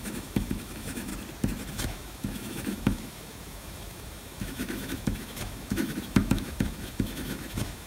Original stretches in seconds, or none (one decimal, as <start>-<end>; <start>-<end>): 1.1-1.7